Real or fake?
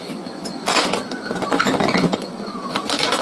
fake